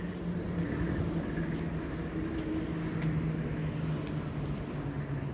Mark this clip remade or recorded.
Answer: recorded